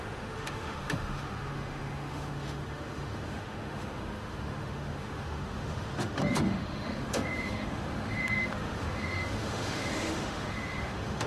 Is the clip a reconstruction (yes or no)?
yes